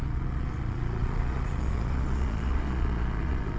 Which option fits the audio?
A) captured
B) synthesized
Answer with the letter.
B